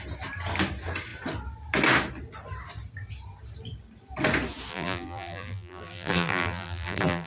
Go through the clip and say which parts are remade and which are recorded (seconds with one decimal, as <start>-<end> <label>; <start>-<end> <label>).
0.0-4.7 recorded; 4.7-7.3 remade